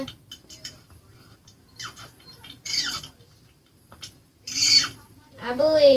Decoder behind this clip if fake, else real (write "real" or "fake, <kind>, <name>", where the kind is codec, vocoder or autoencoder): fake, vocoder, BigVGAN v2